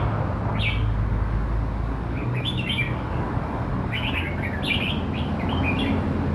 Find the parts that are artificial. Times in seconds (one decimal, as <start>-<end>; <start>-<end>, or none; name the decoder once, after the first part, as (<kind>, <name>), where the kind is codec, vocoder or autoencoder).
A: 0.5-4.3 (codec, DAC)